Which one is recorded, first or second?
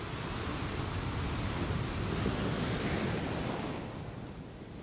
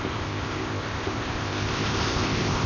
first